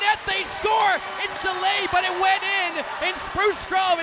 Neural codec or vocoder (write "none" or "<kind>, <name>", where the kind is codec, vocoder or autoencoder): none